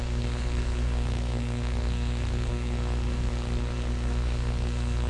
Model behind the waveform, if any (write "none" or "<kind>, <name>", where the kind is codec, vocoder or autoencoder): codec, SNAC